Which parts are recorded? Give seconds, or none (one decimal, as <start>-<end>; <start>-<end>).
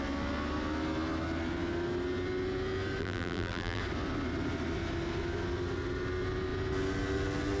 0.0-3.0; 3.8-7.6